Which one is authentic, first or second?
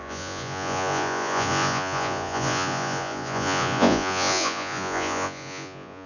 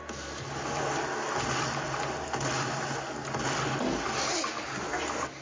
second